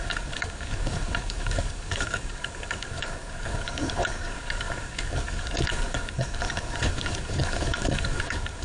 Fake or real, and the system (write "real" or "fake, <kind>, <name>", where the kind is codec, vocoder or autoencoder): fake, codec, DAC